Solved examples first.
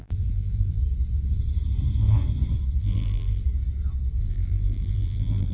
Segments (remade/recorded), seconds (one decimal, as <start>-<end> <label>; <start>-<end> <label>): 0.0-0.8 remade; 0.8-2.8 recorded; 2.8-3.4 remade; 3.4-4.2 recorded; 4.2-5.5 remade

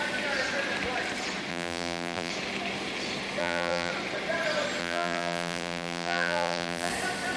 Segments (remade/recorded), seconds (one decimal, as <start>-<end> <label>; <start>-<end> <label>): 0.0-1.5 recorded; 1.5-2.3 remade; 2.3-3.4 recorded; 3.4-3.9 remade; 3.9-4.8 recorded; 4.8-6.9 remade; 6.9-7.4 recorded

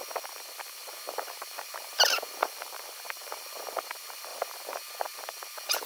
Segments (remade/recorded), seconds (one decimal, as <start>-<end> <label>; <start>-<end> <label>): 0.0-0.8 recorded; 0.8-3.6 remade; 3.6-5.9 recorded

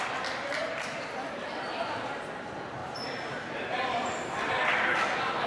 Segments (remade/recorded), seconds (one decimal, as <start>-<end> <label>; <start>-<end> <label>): 0.0-0.6 recorded; 0.6-1.1 remade; 1.1-2.8 recorded; 2.8-4.4 remade; 4.4-5.5 recorded

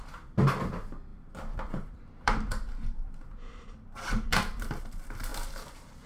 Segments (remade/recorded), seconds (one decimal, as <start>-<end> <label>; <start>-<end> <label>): 0.0-1.1 recorded; 1.1-4.8 remade; 4.8-6.1 recorded